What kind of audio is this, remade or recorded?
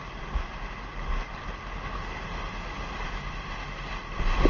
recorded